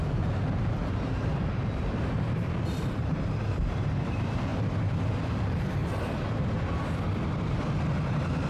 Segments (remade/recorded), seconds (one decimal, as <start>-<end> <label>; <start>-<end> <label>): 0.0-4.5 remade; 4.5-5.3 recorded; 5.3-5.8 remade; 5.8-8.5 recorded